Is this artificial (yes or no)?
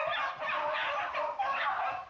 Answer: no